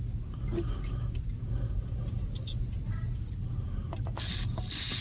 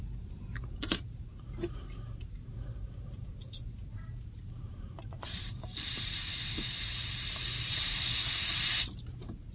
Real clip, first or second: first